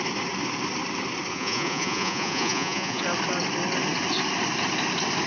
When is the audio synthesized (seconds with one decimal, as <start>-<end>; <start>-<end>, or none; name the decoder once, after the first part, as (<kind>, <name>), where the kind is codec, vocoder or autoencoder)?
1.3-3.0 (vocoder, Vocos)